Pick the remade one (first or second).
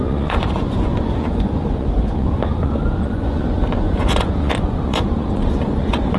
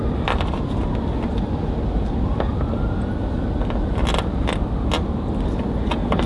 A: first